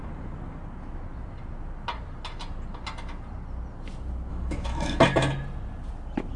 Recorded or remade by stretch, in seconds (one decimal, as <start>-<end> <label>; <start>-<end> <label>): 0.0-4.3 recorded; 4.3-5.0 remade; 5.0-6.4 recorded